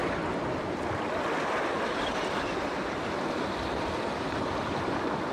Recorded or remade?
remade